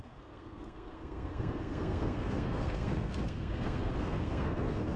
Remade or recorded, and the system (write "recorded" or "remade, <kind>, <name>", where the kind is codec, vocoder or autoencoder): remade, codec, SNAC